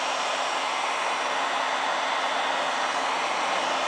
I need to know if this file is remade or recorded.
recorded